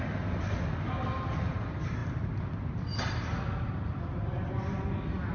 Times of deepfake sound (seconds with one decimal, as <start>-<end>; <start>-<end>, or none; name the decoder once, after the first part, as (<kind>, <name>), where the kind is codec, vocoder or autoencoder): none